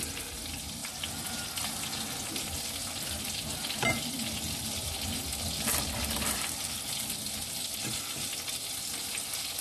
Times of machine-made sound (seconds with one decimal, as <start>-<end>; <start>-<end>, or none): none